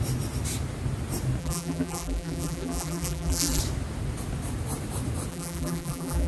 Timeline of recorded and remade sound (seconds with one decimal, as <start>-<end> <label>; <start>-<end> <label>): 0.0-1.4 recorded; 1.4-3.6 remade; 3.6-5.3 recorded; 5.3-6.3 remade